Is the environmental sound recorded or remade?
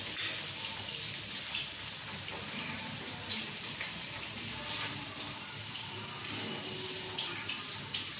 recorded